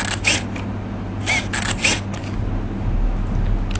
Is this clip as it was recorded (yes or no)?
yes